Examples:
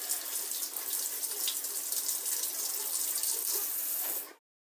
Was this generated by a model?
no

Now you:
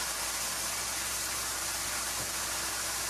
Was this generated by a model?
no